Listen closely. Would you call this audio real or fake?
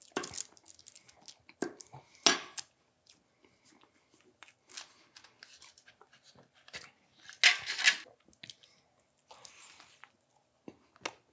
real